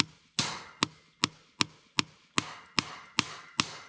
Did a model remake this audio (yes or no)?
no